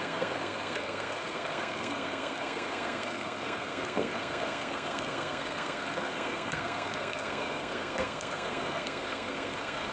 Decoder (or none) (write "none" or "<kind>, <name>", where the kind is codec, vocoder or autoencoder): codec, SNAC